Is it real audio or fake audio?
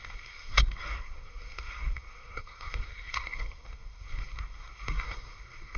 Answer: fake